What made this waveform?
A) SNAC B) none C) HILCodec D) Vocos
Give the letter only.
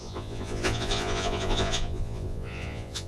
D